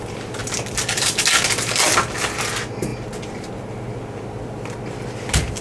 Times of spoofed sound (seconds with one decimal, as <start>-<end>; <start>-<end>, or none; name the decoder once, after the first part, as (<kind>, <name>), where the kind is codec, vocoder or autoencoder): none